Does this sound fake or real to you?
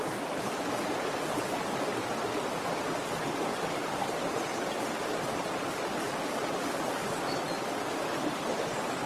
real